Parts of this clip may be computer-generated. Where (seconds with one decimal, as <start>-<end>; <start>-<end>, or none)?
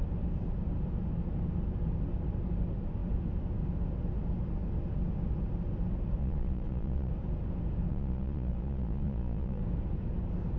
6.2-7.1; 7.9-9.6